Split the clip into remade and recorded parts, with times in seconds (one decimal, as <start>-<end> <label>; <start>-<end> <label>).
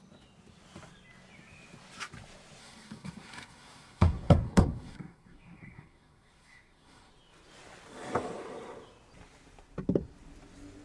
0.0-2.6 recorded; 2.6-7.1 remade; 7.1-10.8 recorded